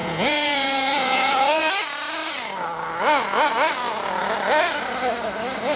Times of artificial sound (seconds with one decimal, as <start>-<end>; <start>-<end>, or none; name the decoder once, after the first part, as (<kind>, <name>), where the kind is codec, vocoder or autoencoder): 0.0-1.7 (vocoder, Vocos)